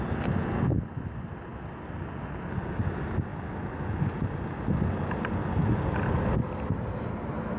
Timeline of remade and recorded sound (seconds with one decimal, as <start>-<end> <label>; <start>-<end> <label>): 0.0-7.6 recorded